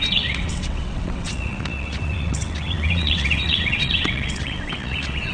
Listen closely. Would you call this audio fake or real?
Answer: fake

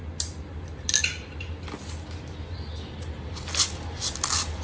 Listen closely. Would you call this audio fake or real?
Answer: real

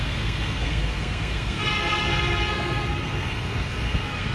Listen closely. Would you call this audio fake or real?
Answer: fake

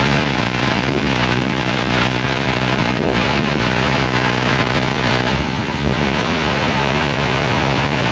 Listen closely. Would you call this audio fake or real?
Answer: fake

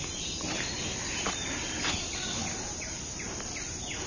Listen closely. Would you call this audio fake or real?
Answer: real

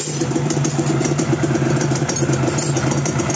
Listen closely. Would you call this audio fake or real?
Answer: real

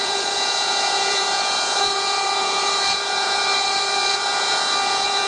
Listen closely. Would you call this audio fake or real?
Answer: fake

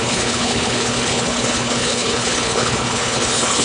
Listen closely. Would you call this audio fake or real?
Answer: fake